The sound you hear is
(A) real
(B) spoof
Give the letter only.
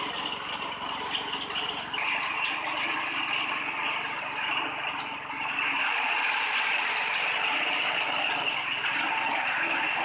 A